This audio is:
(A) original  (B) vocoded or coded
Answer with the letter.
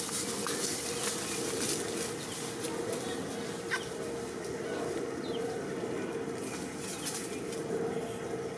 A